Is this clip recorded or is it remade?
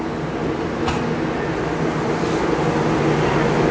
recorded